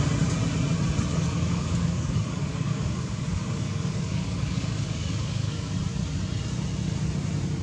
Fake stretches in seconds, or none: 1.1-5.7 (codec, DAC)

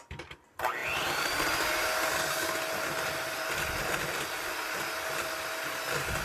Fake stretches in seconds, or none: none

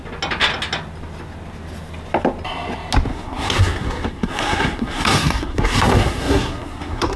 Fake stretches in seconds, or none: 3.1-7.2 (codec, SNAC)

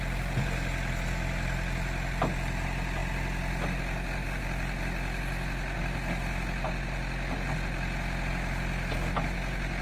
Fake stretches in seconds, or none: none